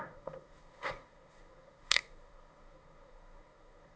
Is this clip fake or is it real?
fake